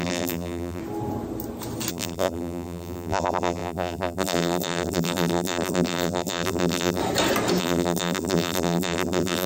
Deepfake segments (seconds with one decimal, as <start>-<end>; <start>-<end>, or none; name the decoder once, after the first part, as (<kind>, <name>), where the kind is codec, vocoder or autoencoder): 0.0-0.8 (vocoder, BigVGAN v2); 1.9-7.0; 7.6-9.5